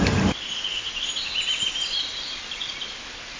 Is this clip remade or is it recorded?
recorded